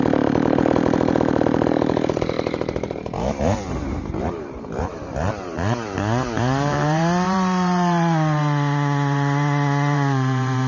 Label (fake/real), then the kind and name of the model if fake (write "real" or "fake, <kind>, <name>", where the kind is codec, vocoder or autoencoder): fake, vocoder, BigVGAN v2